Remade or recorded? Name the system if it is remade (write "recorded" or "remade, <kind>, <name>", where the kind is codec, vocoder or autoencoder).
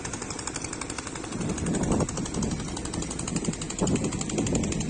recorded